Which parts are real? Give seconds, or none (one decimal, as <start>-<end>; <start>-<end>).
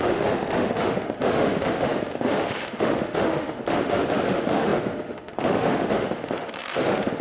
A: none